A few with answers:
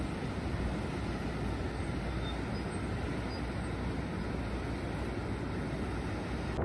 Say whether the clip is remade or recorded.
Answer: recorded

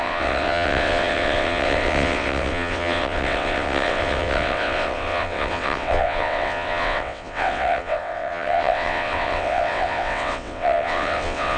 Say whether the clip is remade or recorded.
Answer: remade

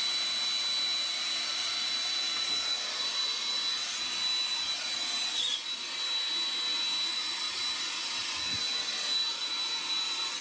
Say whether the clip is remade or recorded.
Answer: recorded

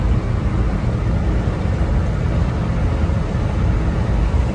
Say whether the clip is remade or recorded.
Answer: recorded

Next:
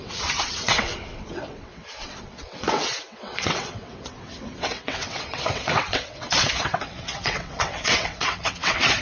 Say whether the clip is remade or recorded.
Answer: remade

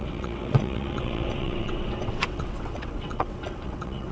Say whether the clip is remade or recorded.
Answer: remade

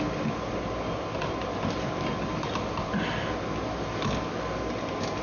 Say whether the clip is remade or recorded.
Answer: recorded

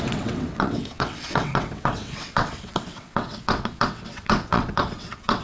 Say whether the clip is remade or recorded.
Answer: remade